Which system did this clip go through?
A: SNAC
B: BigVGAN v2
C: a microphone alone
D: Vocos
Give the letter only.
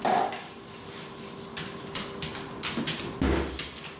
C